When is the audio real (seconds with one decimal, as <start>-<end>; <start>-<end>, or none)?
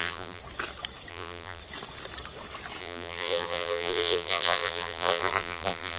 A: 0.4-1.1; 1.6-2.8